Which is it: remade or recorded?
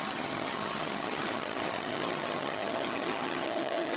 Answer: remade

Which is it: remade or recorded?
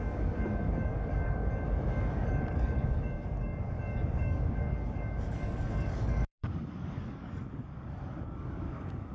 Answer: remade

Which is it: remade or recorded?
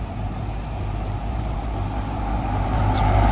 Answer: remade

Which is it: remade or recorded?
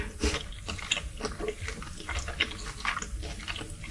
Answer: recorded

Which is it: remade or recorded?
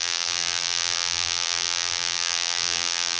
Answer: remade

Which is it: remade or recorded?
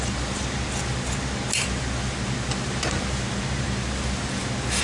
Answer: recorded